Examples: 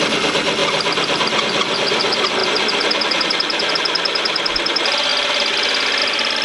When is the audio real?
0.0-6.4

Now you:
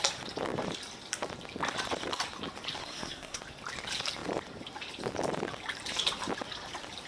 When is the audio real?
0.0-2.8; 3.4-7.1

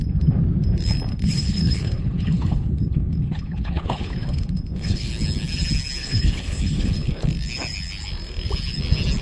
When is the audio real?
0.0-1.1; 5.1-6.0; 7.3-9.2

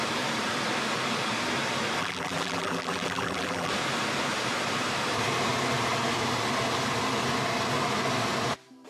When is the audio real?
0.0-2.0; 3.7-8.9